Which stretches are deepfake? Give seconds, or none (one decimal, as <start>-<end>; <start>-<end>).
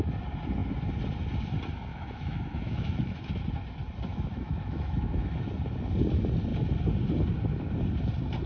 1.9-3.3; 4.1-5.4